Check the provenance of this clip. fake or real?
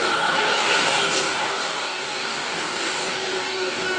fake